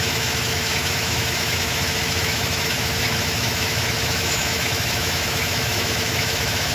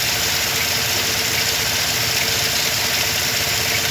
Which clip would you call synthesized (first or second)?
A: first